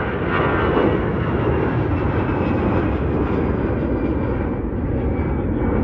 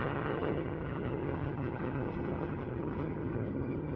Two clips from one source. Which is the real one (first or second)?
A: first